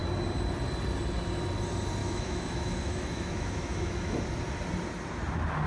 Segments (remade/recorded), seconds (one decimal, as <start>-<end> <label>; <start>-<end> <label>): 0.0-2.0 recorded; 2.0-4.2 remade; 4.2-5.7 recorded